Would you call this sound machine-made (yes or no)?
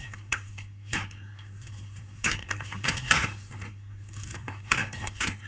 yes